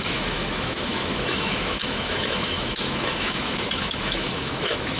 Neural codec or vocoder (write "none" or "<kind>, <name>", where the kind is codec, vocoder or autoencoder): autoencoder, DAC-VAE